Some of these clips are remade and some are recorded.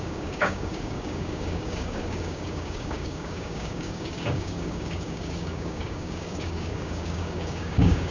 remade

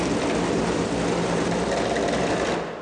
recorded